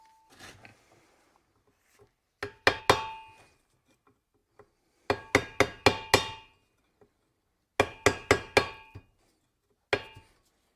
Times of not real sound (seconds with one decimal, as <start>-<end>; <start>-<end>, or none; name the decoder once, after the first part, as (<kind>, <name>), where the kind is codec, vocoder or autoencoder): none